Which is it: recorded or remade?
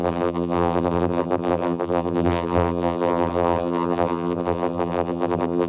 remade